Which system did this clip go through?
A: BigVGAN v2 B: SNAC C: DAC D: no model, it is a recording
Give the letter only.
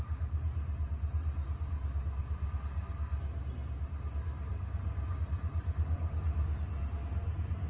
D